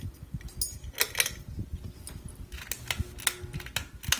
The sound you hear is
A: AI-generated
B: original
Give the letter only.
B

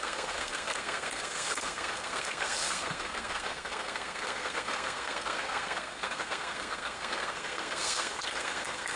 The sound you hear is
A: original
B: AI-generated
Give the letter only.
B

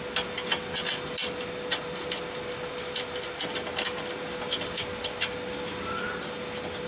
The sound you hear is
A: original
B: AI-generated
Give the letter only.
A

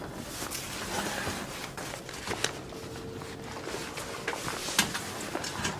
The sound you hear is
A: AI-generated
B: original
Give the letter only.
B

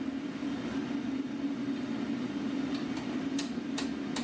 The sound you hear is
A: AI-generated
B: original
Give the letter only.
B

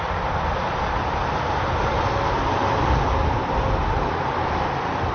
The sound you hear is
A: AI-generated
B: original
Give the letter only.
A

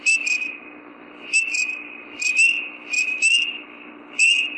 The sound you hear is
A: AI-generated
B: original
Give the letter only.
B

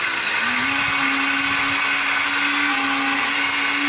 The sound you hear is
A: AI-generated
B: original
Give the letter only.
B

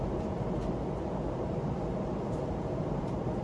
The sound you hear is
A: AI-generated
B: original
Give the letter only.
A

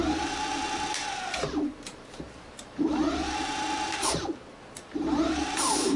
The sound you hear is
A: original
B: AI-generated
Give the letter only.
B